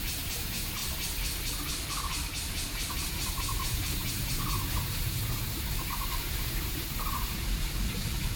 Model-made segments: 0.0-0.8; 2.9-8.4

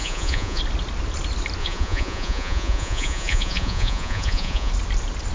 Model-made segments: 0.0-0.6; 1.6-4.7

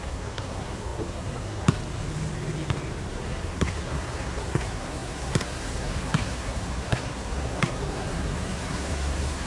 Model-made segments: 0.0-1.8; 3.1-9.5

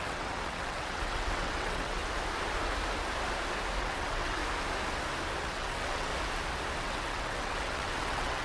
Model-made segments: 0.0-2.0; 3.8-4.4; 5.4-6.1; 6.8-8.4

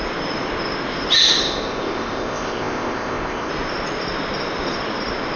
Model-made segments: 1.4-3.5

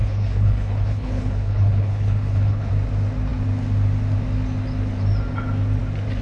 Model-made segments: 0.0-2.7

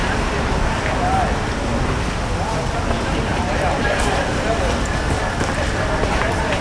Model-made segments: none